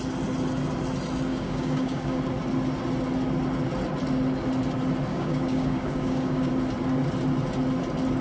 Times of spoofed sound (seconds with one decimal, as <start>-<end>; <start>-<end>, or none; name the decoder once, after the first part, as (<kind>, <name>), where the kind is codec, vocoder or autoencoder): 1.3-2.2 (codec, DAC); 5.1-6.5